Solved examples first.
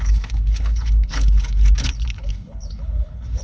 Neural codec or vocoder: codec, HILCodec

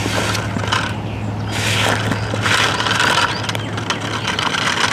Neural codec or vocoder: none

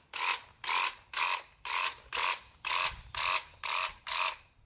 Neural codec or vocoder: none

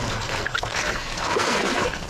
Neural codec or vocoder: codec, SNAC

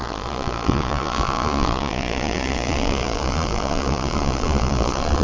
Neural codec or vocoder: vocoder, Vocos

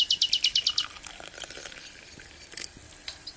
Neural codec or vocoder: none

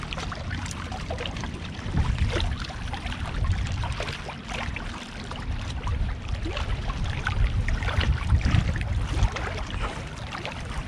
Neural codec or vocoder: vocoder, BigVGAN v2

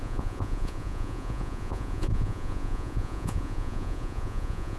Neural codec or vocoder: vocoder, Vocos